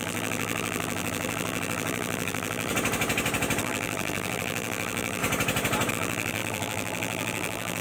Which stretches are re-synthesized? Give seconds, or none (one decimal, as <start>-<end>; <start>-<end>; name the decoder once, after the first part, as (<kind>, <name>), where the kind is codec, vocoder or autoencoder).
0.0-2.7 (vocoder, BigVGAN v2); 3.6-5.2; 5.9-7.8